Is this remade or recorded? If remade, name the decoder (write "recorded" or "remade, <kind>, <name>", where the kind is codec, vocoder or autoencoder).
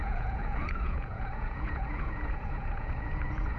remade, vocoder, Vocos